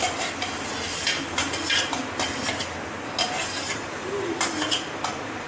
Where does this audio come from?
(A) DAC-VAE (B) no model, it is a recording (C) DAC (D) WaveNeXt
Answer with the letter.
B